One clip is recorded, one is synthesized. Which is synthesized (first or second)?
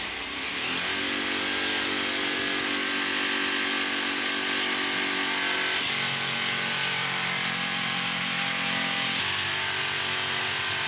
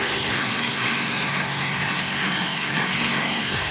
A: second